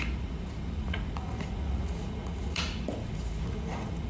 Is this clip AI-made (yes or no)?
yes